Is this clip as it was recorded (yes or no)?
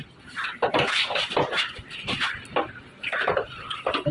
yes